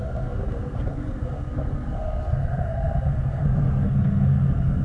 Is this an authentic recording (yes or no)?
no